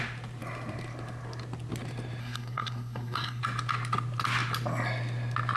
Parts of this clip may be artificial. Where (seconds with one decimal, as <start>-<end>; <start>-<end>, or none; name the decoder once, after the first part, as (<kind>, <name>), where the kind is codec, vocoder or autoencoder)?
2.2-3.4 (codec, SNAC)